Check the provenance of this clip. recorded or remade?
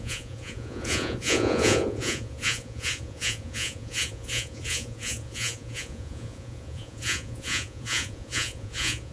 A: remade